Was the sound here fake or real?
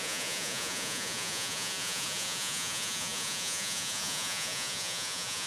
fake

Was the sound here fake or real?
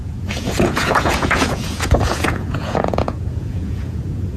fake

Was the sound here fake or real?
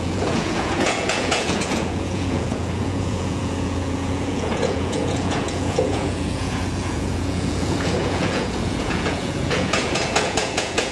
fake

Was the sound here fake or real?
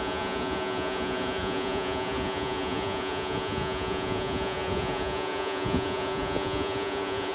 fake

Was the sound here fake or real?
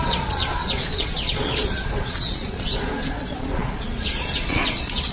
fake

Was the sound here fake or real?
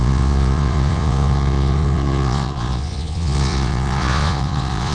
fake